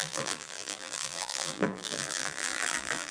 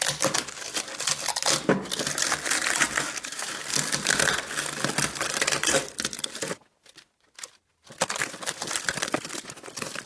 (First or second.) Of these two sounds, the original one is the second